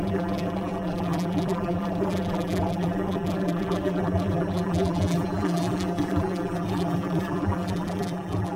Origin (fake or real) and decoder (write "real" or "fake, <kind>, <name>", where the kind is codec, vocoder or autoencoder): fake, vocoder, BigVGAN v2